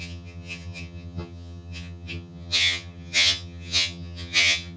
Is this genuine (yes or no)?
no